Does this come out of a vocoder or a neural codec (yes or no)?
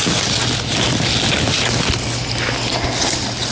no